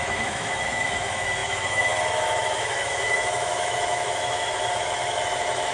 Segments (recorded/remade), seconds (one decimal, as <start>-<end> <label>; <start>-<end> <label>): 0.0-5.7 remade